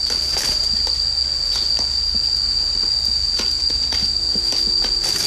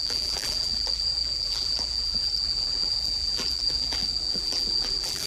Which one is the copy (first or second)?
second